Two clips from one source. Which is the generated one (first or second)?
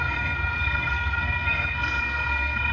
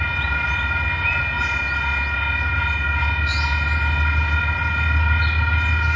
first